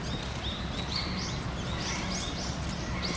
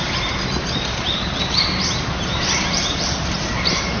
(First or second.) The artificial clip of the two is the second